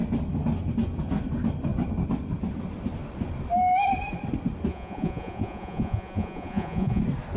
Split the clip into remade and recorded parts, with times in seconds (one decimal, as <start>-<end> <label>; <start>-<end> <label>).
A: 0.0-4.7 recorded; 4.7-7.0 remade; 7.0-7.4 recorded